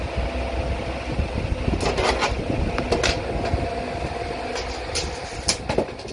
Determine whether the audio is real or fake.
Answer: real